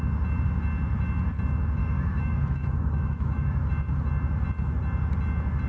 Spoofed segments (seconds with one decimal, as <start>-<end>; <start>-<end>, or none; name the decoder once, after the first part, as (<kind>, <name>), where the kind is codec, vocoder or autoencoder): 1.8-3.7 (autoencoder, DAC-VAE)